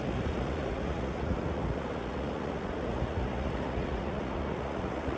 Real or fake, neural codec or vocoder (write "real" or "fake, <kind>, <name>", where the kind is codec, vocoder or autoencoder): fake, vocoder, Vocos